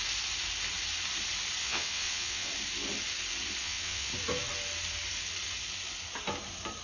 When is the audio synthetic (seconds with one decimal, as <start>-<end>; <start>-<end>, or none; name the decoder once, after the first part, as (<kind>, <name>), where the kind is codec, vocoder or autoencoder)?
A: 1.6-2.5 (vocoder, WaveNeXt); 3.6-4.1